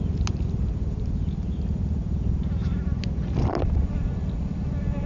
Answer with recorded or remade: recorded